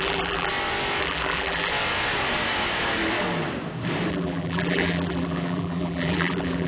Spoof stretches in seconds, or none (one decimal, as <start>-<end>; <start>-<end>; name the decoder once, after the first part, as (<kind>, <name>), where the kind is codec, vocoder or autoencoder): 0.0-0.5 (vocoder, BigVGAN v2); 1.0-1.7; 4.1-6.7